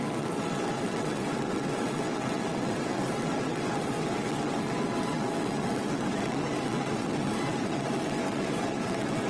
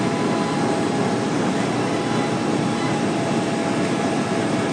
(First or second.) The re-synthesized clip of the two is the first